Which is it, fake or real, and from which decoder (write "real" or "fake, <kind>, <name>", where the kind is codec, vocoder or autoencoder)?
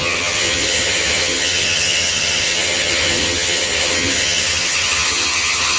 fake, vocoder, HiFi-GAN